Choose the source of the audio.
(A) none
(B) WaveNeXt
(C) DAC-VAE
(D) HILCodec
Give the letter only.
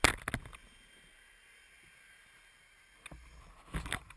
A